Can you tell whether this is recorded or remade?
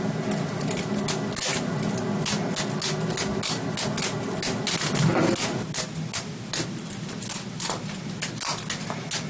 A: recorded